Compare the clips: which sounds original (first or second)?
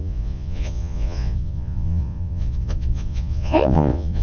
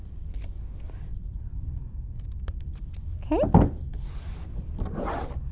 second